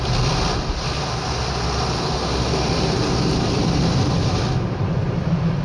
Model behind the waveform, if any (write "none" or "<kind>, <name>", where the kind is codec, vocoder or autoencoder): none